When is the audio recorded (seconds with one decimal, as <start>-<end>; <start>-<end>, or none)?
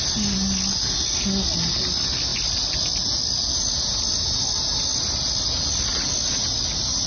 0.0-7.1